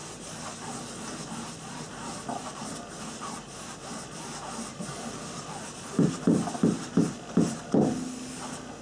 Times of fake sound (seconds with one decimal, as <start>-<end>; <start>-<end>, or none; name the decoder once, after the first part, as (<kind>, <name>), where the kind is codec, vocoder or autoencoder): none